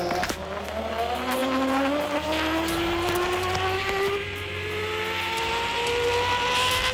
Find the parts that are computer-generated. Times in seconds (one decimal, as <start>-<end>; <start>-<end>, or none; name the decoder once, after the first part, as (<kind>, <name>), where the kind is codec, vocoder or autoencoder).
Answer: none